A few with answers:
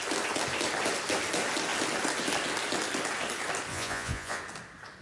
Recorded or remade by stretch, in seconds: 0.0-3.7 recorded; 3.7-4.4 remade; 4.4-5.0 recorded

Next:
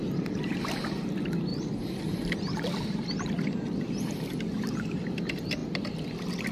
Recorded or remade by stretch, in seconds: 0.0-1.5 recorded; 1.5-3.9 remade; 3.9-6.5 recorded

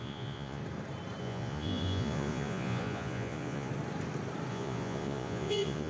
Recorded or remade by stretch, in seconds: 0.0-0.6 remade; 0.6-1.2 recorded; 1.2-3.7 remade; 3.7-4.5 recorded; 4.5-5.9 remade

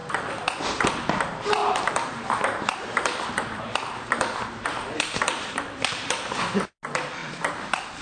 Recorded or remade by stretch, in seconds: 0.0-1.6 recorded; 1.6-6.4 remade; 6.4-7.2 recorded; 7.2-8.0 remade

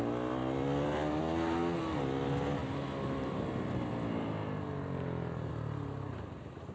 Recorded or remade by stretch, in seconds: 0.0-6.7 recorded

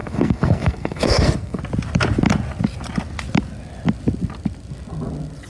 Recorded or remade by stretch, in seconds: 0.0-1.6 remade; 1.6-5.5 recorded